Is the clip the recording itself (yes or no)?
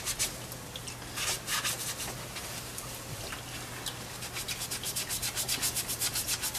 yes